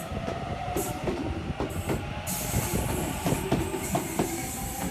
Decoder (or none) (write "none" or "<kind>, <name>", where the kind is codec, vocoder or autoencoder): vocoder, BigVGAN v2